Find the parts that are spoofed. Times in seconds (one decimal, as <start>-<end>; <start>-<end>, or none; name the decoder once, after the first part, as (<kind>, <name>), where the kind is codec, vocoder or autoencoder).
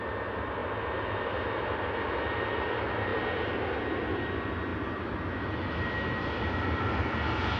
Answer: none